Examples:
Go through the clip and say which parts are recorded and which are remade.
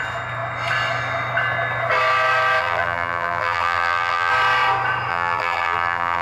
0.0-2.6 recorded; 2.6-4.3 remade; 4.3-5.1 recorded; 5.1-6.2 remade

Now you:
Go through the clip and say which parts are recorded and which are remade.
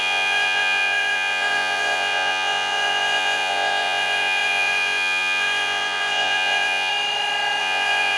0.0-6.9 remade; 6.9-7.6 recorded; 7.6-8.2 remade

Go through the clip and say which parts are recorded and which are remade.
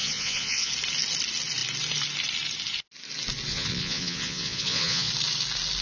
0.0-0.7 remade; 0.7-3.5 recorded; 3.5-5.1 remade; 5.1-5.8 recorded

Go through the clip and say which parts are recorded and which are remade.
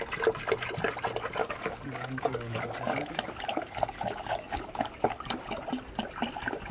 0.0-1.4 recorded; 1.4-5.4 remade; 5.4-6.7 recorded